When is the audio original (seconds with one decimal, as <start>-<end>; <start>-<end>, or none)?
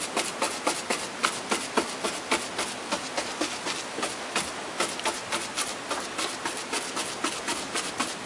0.0-8.3